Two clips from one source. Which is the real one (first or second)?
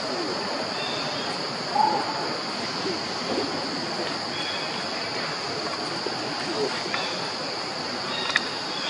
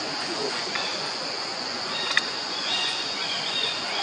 first